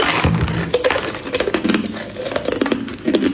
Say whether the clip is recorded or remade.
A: recorded